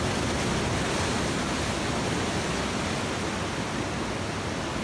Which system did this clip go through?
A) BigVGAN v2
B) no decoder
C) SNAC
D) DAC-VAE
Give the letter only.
B